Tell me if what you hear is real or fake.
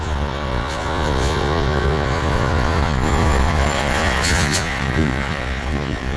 fake